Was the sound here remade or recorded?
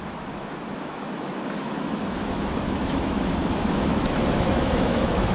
remade